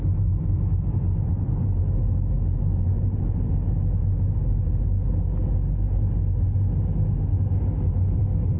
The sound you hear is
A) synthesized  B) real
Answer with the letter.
B